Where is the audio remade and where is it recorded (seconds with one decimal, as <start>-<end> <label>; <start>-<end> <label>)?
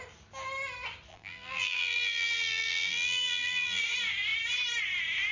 0.0-1.1 recorded; 1.1-3.8 remade; 3.8-5.3 recorded